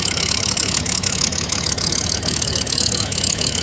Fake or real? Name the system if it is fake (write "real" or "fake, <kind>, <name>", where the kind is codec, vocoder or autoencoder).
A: fake, autoencoder, DAC-VAE